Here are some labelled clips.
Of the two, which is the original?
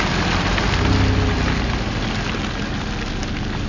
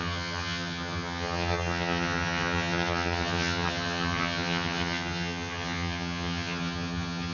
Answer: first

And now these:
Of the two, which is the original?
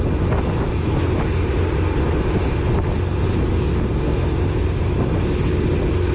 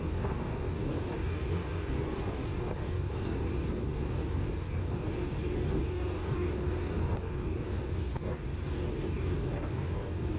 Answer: first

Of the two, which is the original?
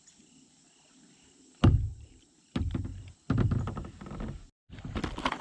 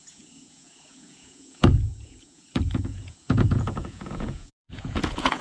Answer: first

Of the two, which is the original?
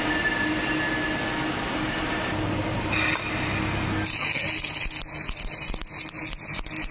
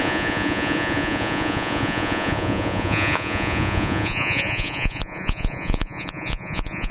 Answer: first